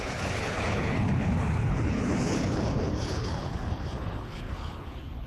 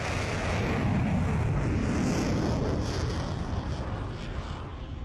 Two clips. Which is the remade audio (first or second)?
first